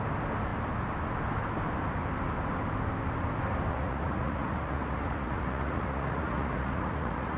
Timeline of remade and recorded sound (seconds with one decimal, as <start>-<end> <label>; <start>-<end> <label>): 0.0-3.7 recorded; 3.7-7.4 remade